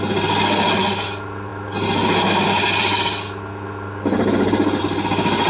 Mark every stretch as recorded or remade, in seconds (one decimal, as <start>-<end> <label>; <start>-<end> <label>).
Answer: 0.0-5.5 recorded